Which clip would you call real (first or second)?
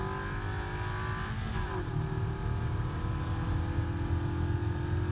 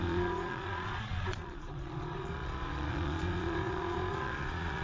first